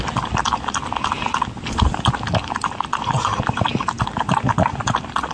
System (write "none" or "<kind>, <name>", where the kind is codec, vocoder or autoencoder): none